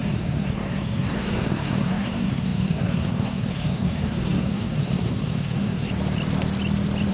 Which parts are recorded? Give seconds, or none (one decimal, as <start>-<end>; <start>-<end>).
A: 5.9-7.1